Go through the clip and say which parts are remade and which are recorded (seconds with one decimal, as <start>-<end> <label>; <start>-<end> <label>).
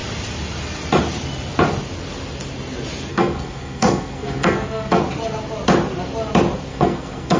0.0-3.1 recorded; 3.1-5.0 remade; 5.0-6.7 recorded; 6.7-7.4 remade